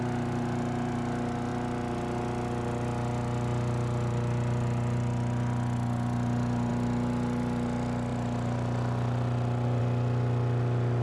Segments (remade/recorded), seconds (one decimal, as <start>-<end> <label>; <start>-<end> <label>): 0.0-11.0 recorded